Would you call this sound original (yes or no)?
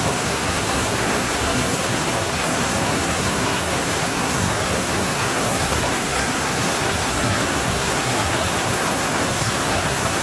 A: no